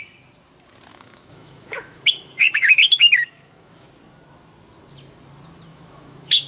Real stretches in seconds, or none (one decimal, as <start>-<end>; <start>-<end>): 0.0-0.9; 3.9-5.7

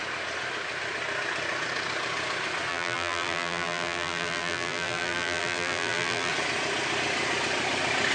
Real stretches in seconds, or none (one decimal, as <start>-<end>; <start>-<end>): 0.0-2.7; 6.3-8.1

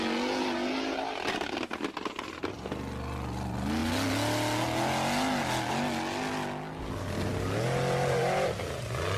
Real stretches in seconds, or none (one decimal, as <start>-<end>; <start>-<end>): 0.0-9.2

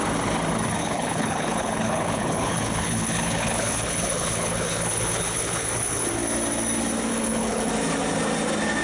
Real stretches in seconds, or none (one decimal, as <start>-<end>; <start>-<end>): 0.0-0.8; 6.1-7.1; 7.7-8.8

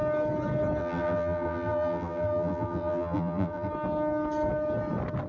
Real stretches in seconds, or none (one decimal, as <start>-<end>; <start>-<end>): 0.0-0.8; 3.7-5.3

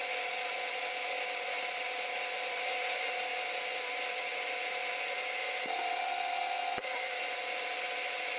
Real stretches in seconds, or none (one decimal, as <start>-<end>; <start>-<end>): 0.0-8.4

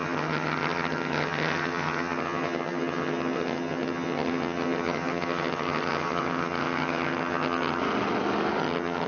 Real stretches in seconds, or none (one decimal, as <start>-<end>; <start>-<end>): 7.8-8.6